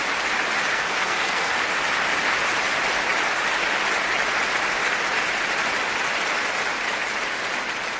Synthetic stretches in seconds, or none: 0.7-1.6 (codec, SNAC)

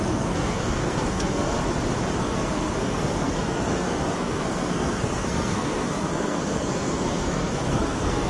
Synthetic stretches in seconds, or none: 0.0-1.6 (codec, SNAC); 2.2-8.3

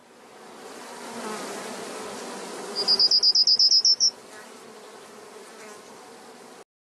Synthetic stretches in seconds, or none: none

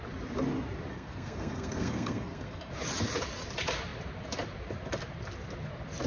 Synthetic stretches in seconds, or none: 0.9-2.7 (codec, SNAC)

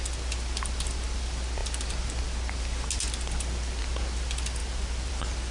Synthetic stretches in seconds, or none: none

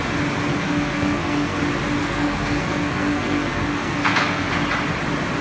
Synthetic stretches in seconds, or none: 0.5-1.6 (codec, SNAC); 2.0-4.5

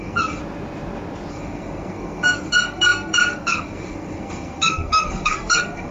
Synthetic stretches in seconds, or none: 0.0-0.4 (codec, SNAC); 1.3-5.9

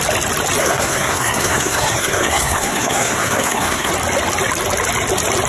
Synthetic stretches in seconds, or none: 0.6-3.9 (codec, SNAC)